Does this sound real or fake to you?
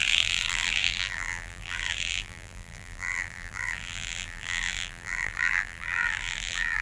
fake